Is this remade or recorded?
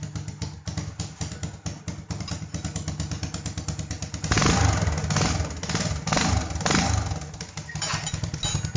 recorded